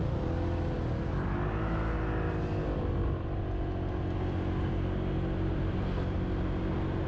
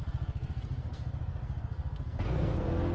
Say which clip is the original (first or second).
first